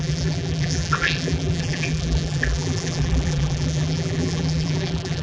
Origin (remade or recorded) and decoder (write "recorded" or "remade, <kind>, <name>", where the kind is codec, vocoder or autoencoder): remade, vocoder, BigVGAN v2